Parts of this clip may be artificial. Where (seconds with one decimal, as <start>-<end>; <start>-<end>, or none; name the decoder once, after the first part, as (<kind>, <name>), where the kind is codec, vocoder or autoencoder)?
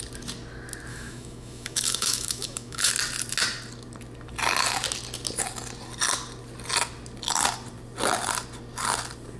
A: 0.9-2.9 (autoencoder, DAC-VAE)